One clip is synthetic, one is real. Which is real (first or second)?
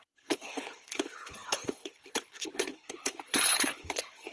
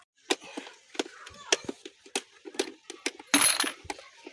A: second